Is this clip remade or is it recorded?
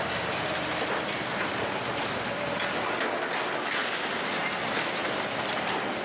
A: recorded